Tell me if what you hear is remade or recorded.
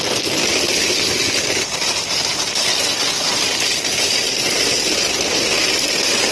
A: recorded